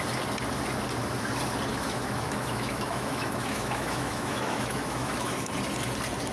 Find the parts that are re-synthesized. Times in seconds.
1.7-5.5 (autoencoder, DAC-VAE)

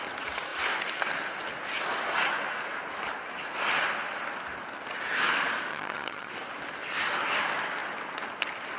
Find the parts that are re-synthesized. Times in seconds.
5.7-6.3 (vocoder, HiFi-GAN)

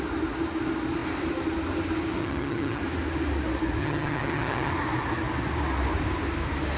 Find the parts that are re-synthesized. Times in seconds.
2.2-2.8 (vocoder, HiFi-GAN); 3.8-4.7

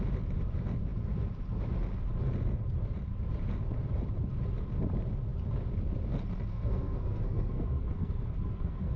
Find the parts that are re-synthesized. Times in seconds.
6.5-9.0 (codec, SNAC)

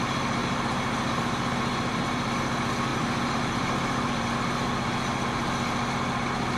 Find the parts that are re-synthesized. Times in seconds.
0.4-2.3 (vocoder, BigVGAN v2); 2.9-4.3

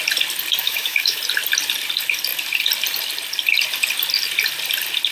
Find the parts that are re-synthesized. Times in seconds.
0.6-1.2 (autoencoder, DAC-VAE)

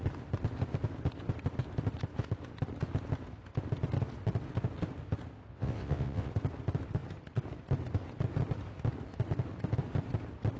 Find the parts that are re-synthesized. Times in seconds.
5.5-6.3 (vocoder, WaveNeXt)

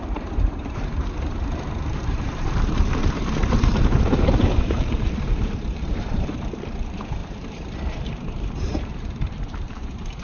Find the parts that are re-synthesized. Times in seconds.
0.0-10.2 (vocoder, BigVGAN v2)